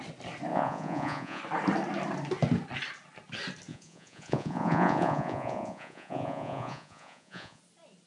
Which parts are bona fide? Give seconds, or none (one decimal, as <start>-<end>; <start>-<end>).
0.0-0.5; 1.4-3.7; 7.6-8.1